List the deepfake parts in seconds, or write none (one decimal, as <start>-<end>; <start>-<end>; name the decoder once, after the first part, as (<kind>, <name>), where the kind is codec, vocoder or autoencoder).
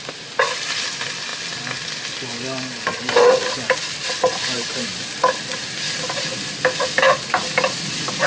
none